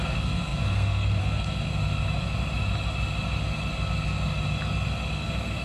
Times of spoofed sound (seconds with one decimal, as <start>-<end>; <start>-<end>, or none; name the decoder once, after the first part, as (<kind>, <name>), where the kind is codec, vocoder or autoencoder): 0.0-1.7 (codec, SNAC); 5.1-5.6